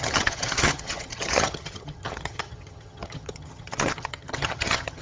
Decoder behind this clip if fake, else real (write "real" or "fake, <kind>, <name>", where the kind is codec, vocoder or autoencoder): fake, vocoder, HiFi-GAN